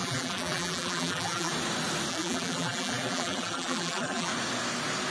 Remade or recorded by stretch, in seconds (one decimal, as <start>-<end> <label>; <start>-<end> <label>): 0.0-1.5 remade; 1.5-2.1 recorded; 2.1-4.3 remade; 4.3-5.1 recorded